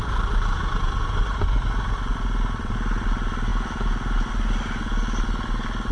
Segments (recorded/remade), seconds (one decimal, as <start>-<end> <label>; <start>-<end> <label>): 0.0-5.9 recorded